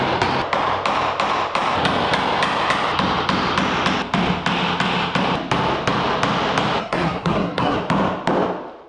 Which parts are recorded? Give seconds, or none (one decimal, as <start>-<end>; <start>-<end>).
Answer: 0.0-6.8; 7.8-8.9